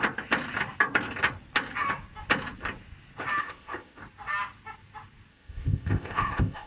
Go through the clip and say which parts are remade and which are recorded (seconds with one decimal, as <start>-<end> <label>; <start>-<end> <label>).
0.0-3.4 recorded; 3.4-4.0 remade; 4.0-5.3 recorded; 5.3-6.7 remade